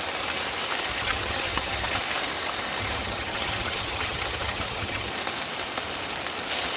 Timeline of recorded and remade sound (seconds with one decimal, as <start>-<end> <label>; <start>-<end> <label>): 0.0-0.9 recorded; 0.9-2.0 remade; 2.0-2.8 recorded; 2.8-5.1 remade; 5.1-6.8 recorded